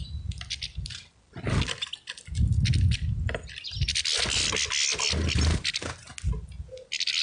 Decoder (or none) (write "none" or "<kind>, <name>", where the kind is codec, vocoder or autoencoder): none